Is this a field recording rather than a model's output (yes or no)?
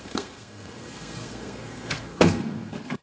no